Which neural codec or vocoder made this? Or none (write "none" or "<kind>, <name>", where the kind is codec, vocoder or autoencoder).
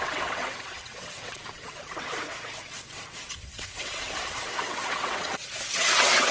vocoder, WaveNeXt